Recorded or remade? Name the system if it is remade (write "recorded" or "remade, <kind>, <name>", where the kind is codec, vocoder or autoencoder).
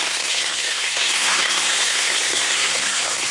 remade, codec, SNAC